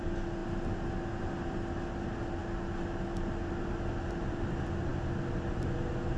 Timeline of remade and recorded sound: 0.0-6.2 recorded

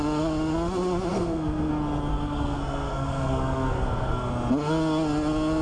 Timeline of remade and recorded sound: 0.0-1.1 recorded; 1.1-1.7 remade; 1.7-2.1 recorded; 2.1-4.3 remade; 4.3-5.6 recorded

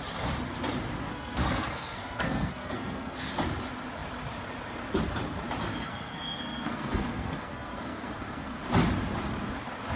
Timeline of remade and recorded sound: 0.0-1.0 recorded; 1.0-3.3 remade; 3.3-5.7 recorded; 5.7-8.6 remade; 8.6-10.0 recorded

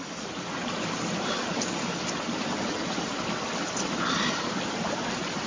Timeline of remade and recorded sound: 0.0-5.5 recorded

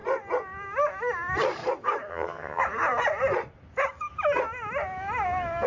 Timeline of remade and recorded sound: 0.0-2.1 recorded; 2.1-2.6 remade; 2.6-5.7 recorded

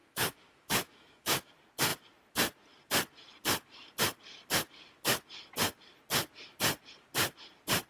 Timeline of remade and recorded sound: 0.0-1.5 remade; 1.5-7.9 recorded